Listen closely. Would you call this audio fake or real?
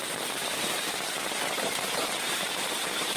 fake